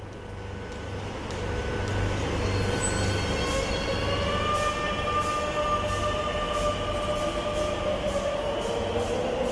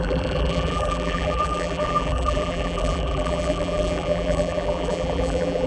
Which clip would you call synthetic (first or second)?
second